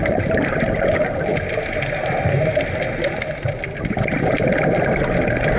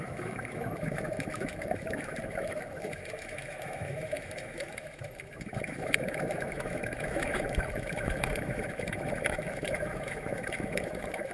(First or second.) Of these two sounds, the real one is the first